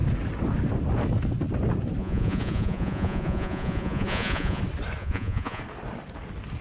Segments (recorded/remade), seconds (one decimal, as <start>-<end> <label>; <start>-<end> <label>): 0.0-2.0 recorded; 2.0-4.6 remade; 4.6-5.0 recorded; 5.0-5.6 remade; 5.6-6.6 recorded